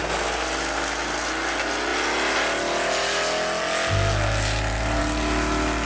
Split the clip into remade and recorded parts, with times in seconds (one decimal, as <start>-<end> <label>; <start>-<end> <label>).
0.0-5.9 recorded